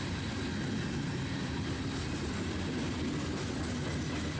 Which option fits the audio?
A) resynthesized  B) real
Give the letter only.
B